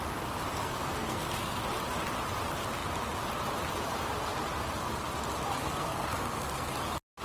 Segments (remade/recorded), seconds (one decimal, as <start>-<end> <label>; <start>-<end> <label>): 0.0-0.6 recorded; 0.6-1.6 remade; 1.6-5.6 recorded; 5.6-6.7 remade; 6.7-7.2 recorded